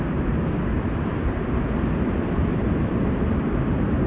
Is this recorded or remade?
recorded